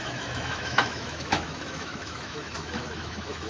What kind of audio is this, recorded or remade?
remade